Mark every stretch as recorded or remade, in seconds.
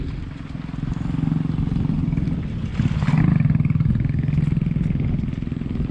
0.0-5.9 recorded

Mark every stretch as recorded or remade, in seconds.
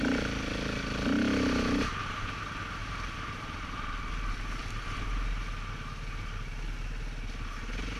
0.0-2.8 recorded; 2.8-4.1 remade; 4.1-8.0 recorded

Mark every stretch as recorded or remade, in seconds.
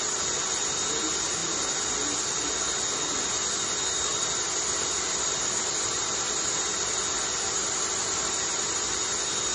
0.0-4.1 recorded; 4.1-9.0 remade; 9.0-9.5 recorded